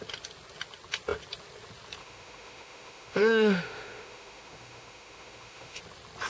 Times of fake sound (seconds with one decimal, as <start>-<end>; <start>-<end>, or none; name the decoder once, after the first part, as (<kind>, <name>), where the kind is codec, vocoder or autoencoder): 2.0-5.8 (autoencoder, DAC-VAE)